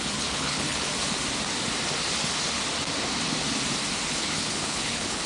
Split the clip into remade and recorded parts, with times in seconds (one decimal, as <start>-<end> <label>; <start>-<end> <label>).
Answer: 0.0-0.9 remade; 0.9-4.1 recorded; 4.1-5.3 remade